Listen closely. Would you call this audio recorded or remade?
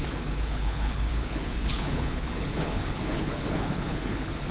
remade